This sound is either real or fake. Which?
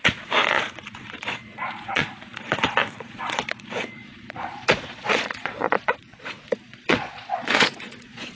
fake